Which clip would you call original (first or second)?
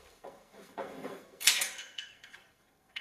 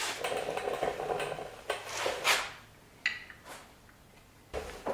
second